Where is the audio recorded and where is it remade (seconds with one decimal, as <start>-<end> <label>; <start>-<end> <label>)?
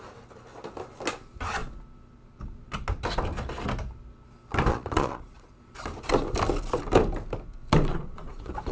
0.0-4.7 recorded; 4.7-5.6 remade; 5.6-7.9 recorded; 7.9-8.7 remade